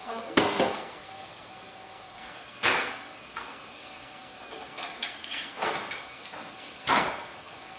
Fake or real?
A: fake